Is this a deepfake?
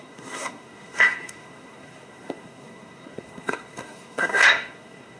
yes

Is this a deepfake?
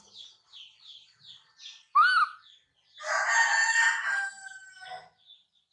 no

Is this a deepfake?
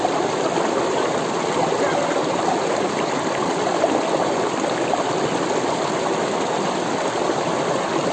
no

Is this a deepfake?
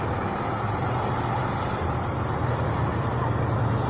no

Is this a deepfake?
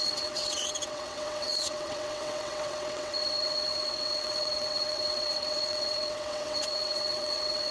yes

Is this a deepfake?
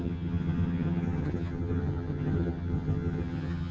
yes